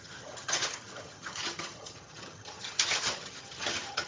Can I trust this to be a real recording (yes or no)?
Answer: no